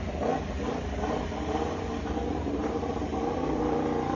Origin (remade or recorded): remade